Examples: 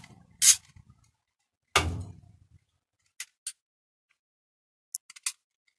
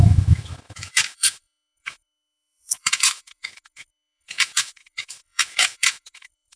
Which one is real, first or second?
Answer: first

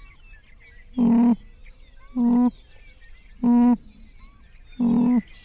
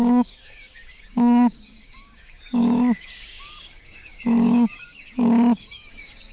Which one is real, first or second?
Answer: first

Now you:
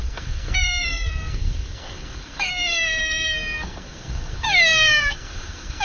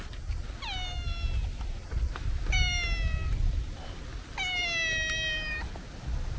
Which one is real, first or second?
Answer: second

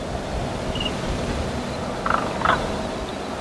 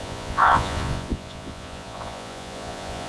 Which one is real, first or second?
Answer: first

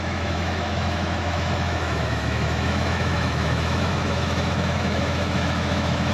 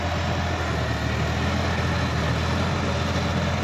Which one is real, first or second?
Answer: second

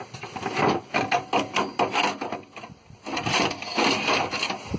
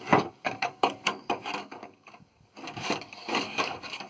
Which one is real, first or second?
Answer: first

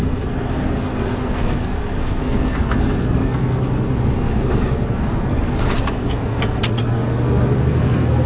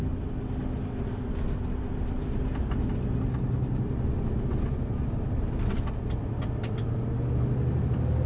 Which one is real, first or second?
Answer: second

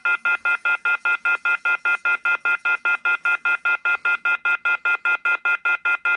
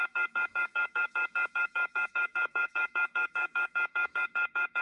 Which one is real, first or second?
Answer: first